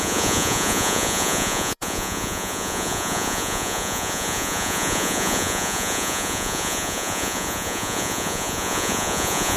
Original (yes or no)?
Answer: no